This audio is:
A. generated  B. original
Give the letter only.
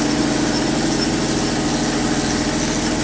B